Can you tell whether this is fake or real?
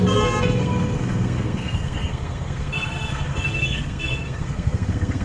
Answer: fake